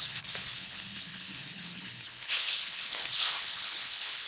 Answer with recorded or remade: remade